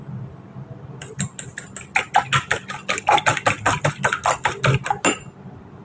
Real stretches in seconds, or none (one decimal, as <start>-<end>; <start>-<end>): 0.0-5.8

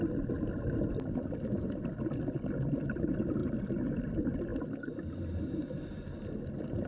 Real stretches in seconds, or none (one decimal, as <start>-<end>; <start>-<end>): 0.0-6.9